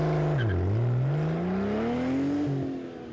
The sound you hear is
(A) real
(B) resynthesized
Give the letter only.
A